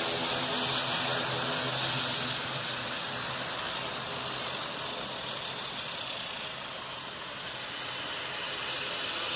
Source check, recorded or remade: recorded